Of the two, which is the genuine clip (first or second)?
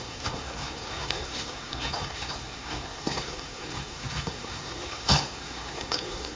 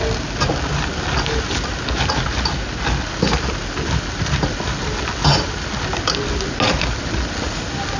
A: second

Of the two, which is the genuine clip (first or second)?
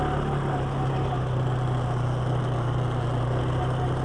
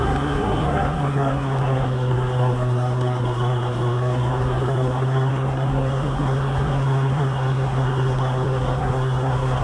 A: first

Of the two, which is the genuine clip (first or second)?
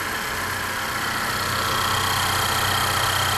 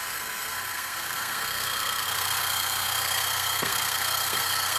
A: first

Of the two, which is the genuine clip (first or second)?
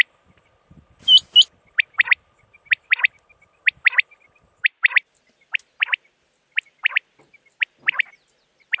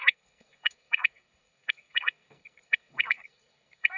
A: first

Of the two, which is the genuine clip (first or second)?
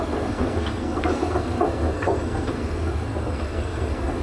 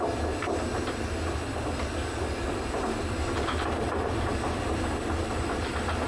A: second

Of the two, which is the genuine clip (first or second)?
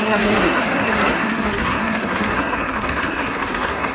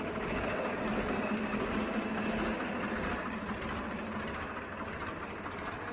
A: second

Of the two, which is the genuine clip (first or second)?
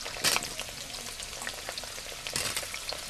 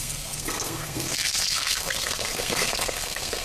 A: first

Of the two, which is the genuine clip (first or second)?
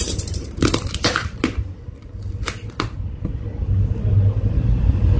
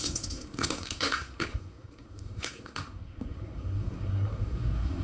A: first